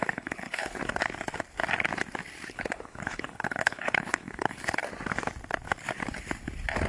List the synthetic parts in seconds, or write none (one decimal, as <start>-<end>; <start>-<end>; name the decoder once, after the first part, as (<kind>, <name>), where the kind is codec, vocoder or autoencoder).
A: 0.0-0.8 (codec, HILCodec); 2.5-4.8